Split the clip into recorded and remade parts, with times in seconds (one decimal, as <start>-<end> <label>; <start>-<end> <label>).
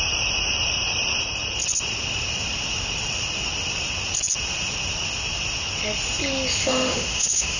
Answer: 0.0-6.6 recorded; 6.6-7.6 remade